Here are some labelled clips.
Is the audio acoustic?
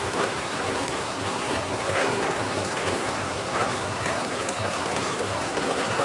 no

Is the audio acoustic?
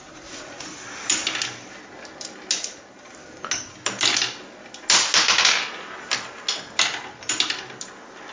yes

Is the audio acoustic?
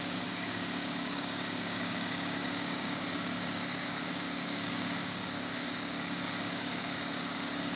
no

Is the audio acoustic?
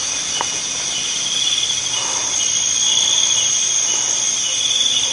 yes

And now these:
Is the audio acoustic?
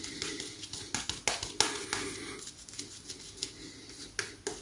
yes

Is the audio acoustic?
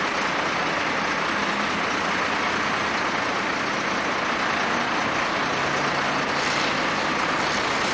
yes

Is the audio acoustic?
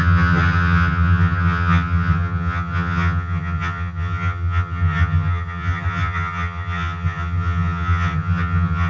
no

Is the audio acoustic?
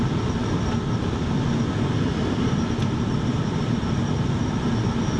yes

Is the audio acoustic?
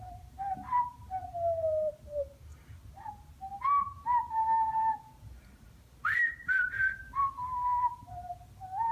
yes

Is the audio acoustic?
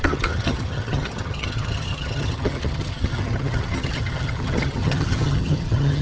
no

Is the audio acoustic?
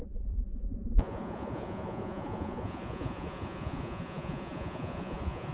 no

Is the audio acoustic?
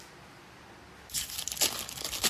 yes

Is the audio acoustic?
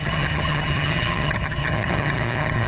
no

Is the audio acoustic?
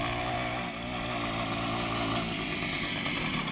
yes